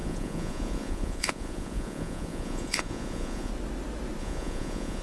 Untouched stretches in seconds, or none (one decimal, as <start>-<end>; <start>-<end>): 3.5-4.2